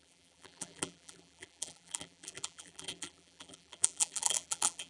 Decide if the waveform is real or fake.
fake